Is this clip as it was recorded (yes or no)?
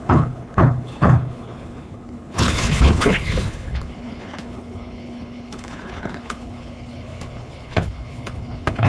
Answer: no